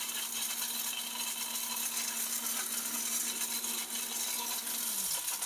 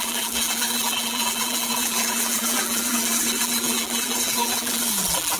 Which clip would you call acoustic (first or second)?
first